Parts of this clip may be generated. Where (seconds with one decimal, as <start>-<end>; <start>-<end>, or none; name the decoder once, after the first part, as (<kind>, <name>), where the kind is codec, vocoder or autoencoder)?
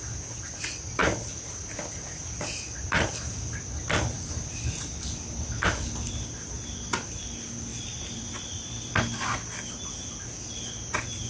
7.7-8.9 (vocoder, BigVGAN v2)